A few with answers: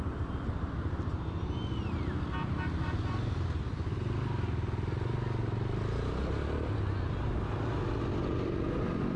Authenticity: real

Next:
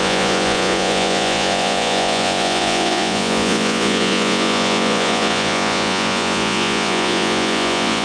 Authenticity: fake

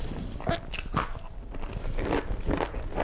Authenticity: real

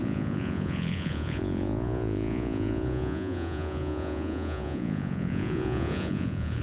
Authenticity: fake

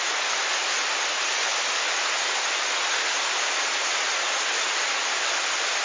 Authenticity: real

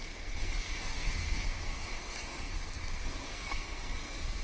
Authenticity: fake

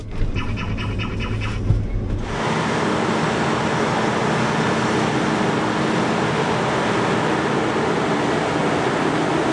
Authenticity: real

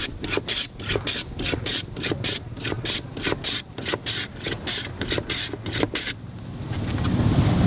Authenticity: real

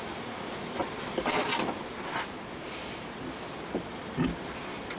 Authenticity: real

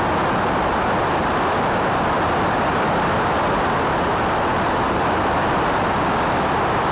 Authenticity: real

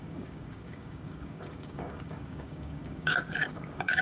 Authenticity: fake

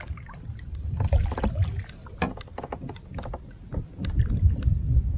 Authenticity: real